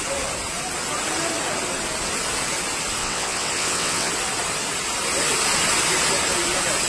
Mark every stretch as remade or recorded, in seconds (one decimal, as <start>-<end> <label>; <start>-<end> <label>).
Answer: 0.0-3.0 recorded; 3.0-4.1 remade; 4.1-6.9 recorded